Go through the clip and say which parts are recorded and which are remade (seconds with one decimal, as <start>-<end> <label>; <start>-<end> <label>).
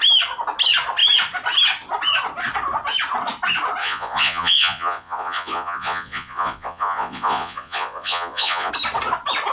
0.0-3.8 recorded; 3.8-8.7 remade; 8.7-9.5 recorded